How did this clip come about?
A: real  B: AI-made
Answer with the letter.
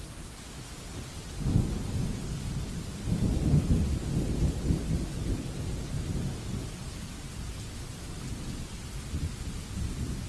A